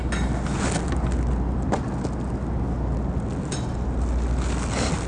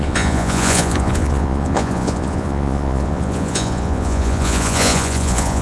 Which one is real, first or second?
first